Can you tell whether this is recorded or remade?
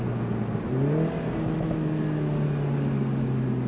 recorded